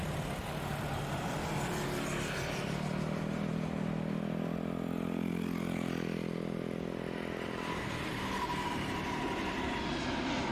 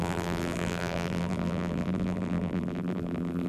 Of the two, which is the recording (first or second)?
first